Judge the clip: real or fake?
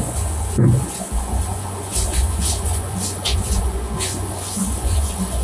fake